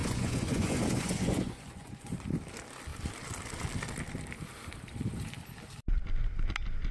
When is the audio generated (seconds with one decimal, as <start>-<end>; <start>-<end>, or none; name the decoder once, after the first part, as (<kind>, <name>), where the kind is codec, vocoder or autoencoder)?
0.0-2.1 (vocoder, Vocos)